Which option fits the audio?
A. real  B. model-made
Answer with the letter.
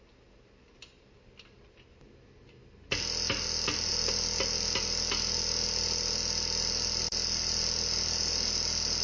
A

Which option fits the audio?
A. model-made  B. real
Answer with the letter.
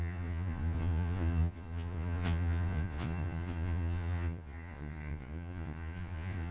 A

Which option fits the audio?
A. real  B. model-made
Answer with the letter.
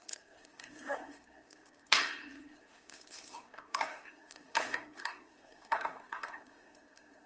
B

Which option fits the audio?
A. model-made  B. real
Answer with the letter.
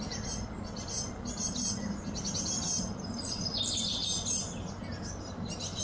B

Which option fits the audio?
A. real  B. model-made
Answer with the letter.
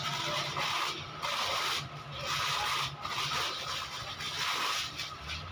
A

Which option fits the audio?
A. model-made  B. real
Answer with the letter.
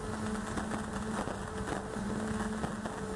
B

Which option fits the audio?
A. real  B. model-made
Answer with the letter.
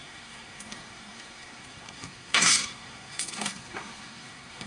B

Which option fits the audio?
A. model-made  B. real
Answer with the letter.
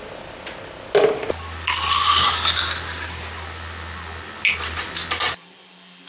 B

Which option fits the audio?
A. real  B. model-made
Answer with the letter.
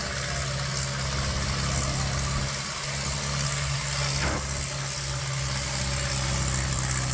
A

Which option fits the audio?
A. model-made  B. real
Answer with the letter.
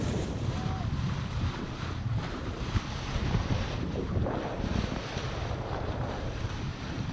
A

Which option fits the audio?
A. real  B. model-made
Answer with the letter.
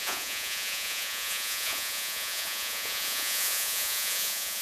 B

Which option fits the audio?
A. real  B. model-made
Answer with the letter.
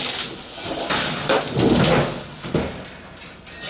A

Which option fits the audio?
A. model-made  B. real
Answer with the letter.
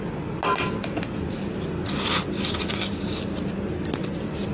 B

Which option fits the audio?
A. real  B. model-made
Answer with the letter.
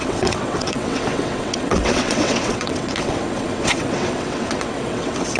B